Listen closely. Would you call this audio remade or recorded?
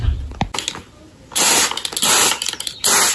recorded